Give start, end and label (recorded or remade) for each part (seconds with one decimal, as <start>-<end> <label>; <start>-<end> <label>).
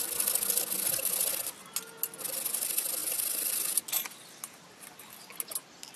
0.0-6.0 recorded